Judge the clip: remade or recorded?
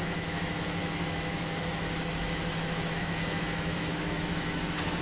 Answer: remade